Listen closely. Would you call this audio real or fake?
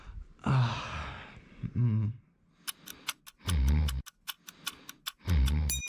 real